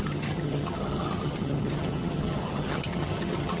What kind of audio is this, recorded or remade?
remade